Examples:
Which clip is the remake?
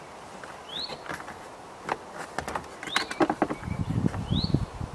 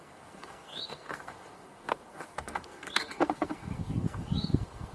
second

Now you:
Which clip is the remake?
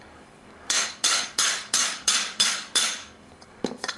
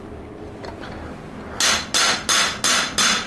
first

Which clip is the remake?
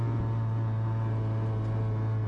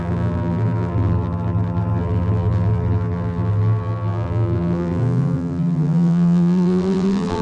second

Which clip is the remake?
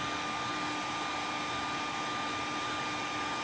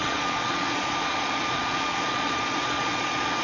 second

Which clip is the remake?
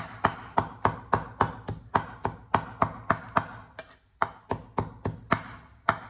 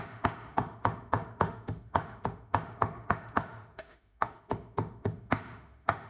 second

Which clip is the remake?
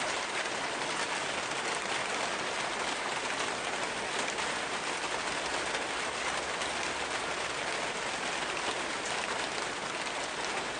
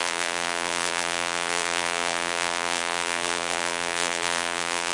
second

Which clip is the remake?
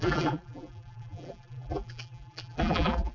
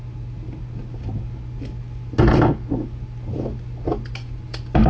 first